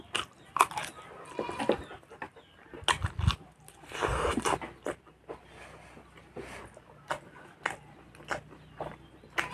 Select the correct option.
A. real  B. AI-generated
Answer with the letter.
A